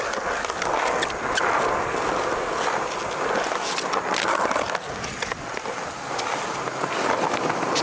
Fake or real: real